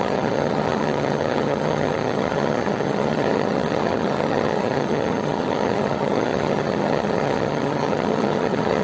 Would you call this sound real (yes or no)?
no